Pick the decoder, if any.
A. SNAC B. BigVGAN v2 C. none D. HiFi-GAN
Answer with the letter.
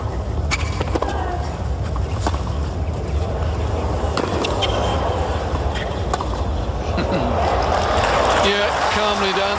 C